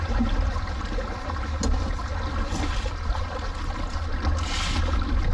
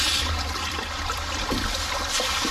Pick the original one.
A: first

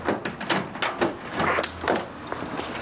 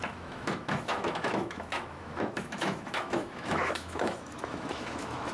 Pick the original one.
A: first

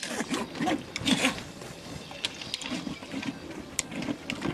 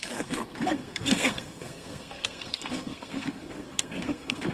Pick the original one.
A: first